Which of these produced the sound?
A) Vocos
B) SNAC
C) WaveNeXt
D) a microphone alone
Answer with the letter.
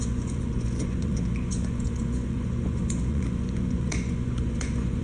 A